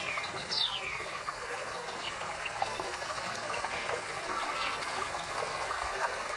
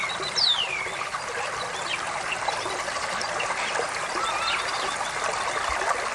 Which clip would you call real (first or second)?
second